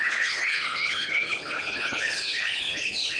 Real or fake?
fake